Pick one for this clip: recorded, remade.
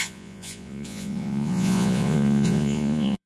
remade